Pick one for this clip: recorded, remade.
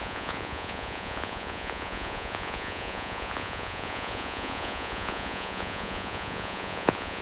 remade